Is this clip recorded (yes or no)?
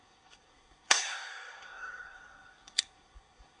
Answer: no